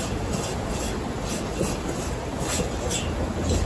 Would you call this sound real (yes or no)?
yes